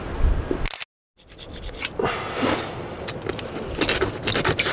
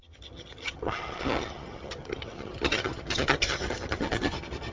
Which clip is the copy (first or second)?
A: second